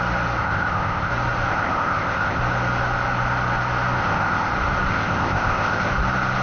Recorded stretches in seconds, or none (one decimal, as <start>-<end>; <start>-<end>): 0.0-0.4; 1.1-1.5; 2.4-4.0; 4.5-4.9; 5.9-6.4